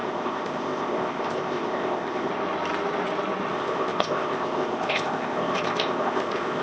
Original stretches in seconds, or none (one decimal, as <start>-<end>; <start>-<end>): 2.3-3.5

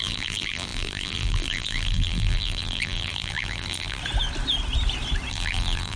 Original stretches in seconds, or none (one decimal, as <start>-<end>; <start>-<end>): 4.0-5.3

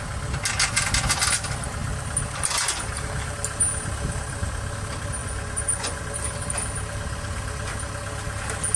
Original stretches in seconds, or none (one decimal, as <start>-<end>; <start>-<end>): 0.0-5.2; 6.0-8.8

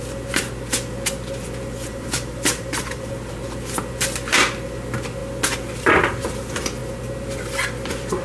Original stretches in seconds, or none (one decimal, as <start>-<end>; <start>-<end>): 0.0-1.9; 3.1-8.2